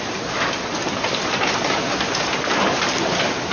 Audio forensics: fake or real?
real